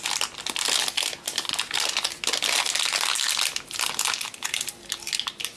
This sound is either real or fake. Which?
real